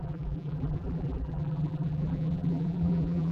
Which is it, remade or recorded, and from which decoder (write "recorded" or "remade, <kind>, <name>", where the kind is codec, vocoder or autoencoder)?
remade, vocoder, BigVGAN v2